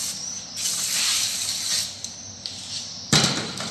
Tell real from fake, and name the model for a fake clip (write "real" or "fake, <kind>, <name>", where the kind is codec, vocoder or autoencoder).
real